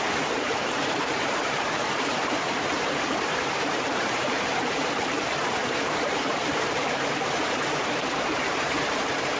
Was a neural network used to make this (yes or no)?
yes